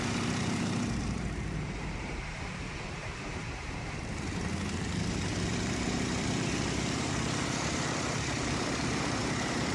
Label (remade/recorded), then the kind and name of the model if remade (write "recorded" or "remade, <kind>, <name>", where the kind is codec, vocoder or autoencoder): remade, vocoder, BigVGAN v2